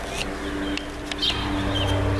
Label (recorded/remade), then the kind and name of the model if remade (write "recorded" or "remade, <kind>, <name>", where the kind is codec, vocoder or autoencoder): recorded